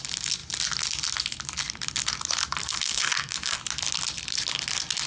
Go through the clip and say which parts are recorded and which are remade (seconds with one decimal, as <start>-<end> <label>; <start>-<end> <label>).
0.0-2.6 recorded; 2.6-3.6 remade; 3.6-5.1 recorded